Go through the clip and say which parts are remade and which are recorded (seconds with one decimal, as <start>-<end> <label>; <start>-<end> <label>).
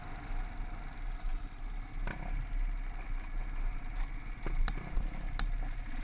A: 0.0-6.0 recorded